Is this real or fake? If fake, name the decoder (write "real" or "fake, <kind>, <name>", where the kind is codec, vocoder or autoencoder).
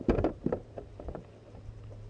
fake, vocoder, BigVGAN v2